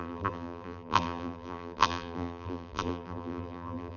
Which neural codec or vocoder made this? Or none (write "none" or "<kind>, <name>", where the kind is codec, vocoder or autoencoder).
vocoder, BigVGAN v2